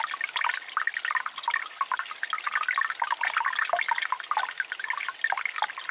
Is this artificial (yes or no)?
no